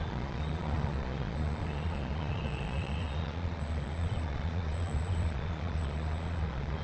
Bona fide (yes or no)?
no